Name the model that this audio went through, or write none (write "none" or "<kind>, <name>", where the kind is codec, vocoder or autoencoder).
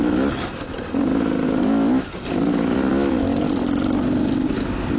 none